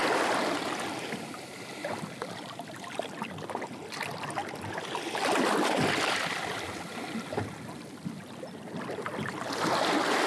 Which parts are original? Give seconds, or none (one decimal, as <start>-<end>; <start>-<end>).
0.0-10.3

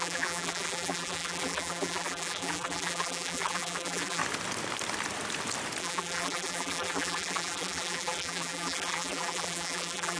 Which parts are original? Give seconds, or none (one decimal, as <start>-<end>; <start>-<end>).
4.2-5.8

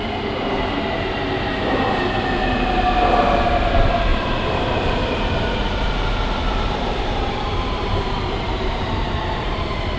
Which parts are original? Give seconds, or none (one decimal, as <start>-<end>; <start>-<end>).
0.0-4.1; 5.9-6.4; 9.6-10.0

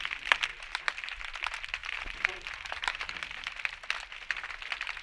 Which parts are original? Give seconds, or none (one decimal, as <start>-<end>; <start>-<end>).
0.0-0.5; 1.2-1.8; 3.0-5.0